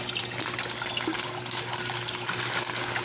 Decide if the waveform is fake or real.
real